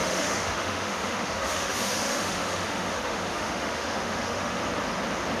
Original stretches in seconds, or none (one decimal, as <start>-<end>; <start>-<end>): 4.6-5.4